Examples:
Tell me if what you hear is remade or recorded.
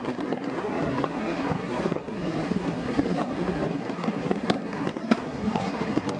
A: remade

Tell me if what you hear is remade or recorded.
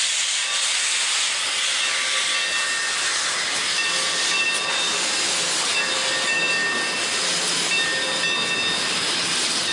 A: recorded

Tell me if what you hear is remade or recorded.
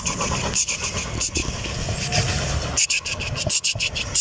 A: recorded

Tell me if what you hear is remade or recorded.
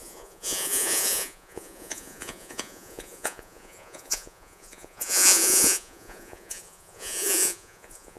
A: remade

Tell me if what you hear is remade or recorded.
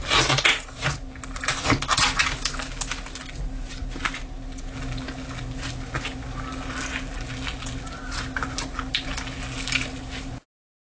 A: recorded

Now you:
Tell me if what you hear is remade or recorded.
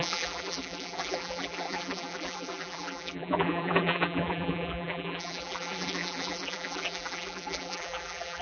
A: remade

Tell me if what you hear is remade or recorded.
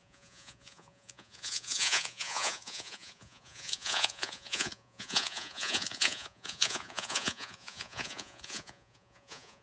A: remade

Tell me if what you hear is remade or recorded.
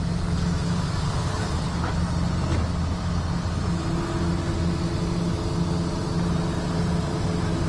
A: recorded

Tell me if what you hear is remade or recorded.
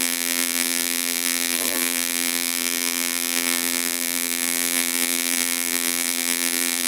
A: remade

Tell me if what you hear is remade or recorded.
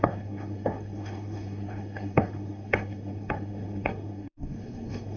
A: remade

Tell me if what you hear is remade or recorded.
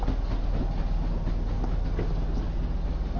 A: recorded